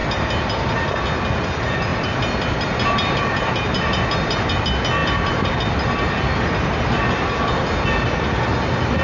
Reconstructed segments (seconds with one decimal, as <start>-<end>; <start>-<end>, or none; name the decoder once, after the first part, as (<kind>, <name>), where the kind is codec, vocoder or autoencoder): 0.0-0.9 (vocoder, BigVGAN v2); 1.9-4.6; 5.0-5.5